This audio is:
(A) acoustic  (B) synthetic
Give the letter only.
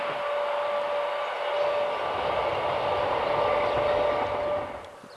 A